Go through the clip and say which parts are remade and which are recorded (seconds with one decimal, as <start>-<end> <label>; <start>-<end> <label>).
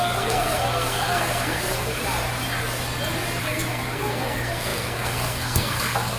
0.0-2.0 remade; 2.0-3.4 recorded; 3.4-6.2 remade